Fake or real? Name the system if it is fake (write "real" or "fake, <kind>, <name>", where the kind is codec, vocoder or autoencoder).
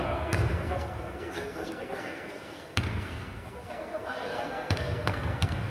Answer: fake, codec, SNAC